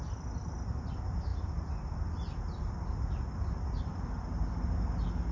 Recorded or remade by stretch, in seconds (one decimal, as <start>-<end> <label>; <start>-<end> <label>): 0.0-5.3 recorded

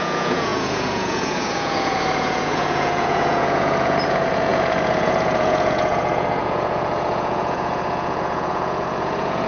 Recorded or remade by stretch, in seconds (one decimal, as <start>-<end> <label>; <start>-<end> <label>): 0.0-9.5 remade

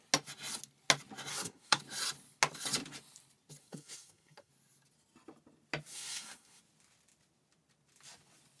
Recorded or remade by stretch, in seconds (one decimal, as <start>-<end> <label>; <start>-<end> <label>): 0.0-1.3 recorded; 1.3-1.8 remade; 1.8-3.6 recorded; 3.6-4.5 remade; 4.5-5.9 recorded; 5.9-6.6 remade; 6.6-8.6 recorded

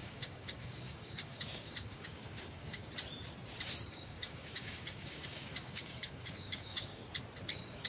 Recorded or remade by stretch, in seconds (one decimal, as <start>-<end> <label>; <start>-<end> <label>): 0.0-2.9 remade; 2.9-3.9 recorded; 3.9-7.0 remade; 7.0-7.5 recorded; 7.5-7.9 remade

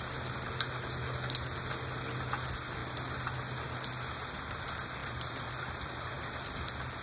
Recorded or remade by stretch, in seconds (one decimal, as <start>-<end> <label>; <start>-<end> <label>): 0.0-5.0 recorded; 5.0-6.5 remade; 6.5-7.0 recorded

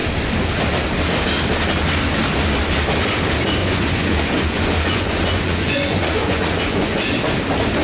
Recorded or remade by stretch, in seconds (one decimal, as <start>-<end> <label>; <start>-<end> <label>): 0.0-3.6 recorded; 3.6-7.0 remade; 7.0-7.8 recorded